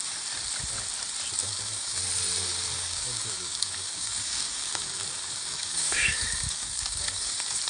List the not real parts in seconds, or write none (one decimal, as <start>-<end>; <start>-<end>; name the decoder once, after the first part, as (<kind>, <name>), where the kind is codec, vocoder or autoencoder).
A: 1.4-2.0 (codec, DAC); 2.7-7.3